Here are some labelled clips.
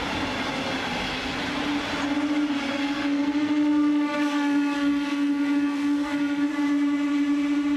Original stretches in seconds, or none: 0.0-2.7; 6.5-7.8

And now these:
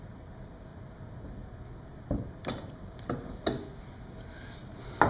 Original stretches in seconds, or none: 0.0-0.7; 3.4-5.1

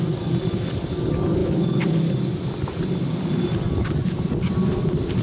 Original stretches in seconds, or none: 0.0-5.2